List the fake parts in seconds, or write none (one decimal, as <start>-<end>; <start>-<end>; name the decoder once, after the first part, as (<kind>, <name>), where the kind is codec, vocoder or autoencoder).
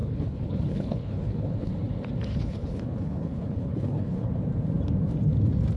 0.0-1.7 (codec, HILCodec); 2.3-4.3